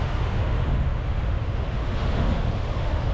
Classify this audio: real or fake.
fake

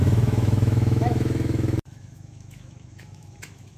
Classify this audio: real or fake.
fake